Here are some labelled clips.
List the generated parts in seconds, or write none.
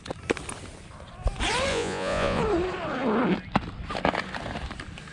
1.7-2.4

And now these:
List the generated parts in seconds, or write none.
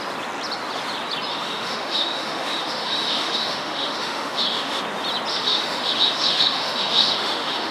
1.3-4.8; 5.3-7.7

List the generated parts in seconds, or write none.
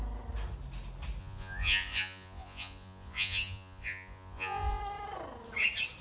1.2-4.8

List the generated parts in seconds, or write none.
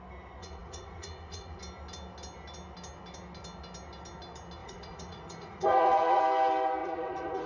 0.4-1.6; 4.6-6.2; 6.8-7.5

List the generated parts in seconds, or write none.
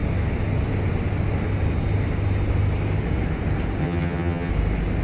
3.8-4.5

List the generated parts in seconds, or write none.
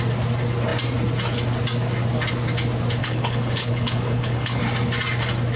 3.0-4.6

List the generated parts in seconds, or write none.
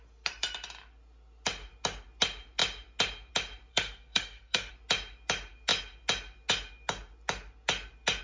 3.7-4.7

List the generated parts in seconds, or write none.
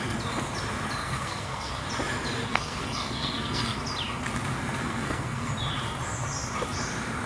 1.0-1.7; 2.5-3.8; 4.8-5.5